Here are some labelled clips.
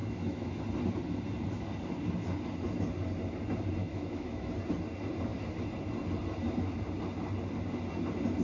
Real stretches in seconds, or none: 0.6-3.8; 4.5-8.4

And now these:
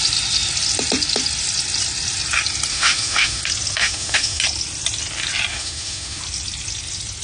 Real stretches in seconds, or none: 0.0-2.7; 3.4-3.8; 4.4-5.5; 6.2-7.2

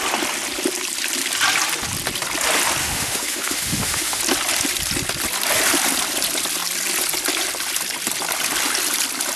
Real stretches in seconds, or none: 0.0-2.8; 4.2-9.4

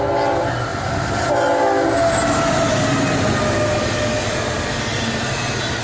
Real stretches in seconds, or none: 0.0-5.8

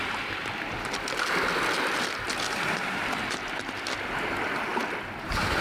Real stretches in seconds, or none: 0.0-5.6

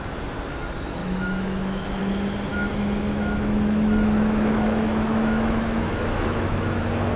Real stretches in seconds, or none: 0.0-1.0; 2.0-2.5; 6.8-7.2